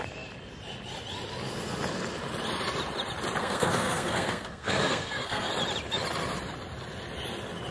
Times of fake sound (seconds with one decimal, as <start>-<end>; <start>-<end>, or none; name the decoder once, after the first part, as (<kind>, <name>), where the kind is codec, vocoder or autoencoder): 3.4-5.5 (codec, SNAC)